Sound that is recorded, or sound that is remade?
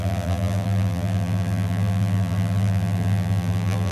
remade